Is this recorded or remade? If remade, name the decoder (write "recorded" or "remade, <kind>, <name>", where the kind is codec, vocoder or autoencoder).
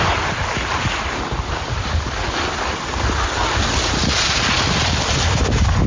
recorded